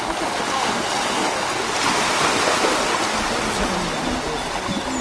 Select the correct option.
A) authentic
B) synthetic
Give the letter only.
A